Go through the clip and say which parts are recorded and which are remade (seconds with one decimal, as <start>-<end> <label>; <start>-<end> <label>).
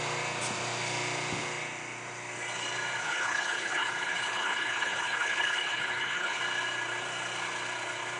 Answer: 0.0-3.0 recorded; 3.0-6.4 remade; 6.4-8.2 recorded